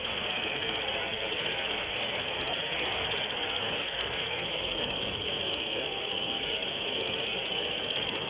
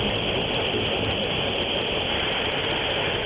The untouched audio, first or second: second